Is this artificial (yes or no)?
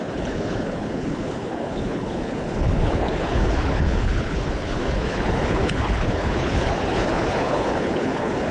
yes